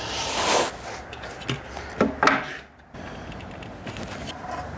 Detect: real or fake real